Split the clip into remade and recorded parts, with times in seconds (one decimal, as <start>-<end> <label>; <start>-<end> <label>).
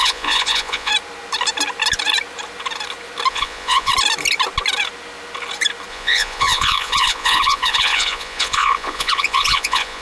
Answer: 0.0-0.9 remade; 0.9-3.3 recorded; 3.3-3.9 remade; 3.9-5.9 recorded; 5.9-10.0 remade